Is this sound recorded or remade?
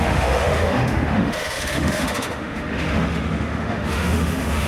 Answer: remade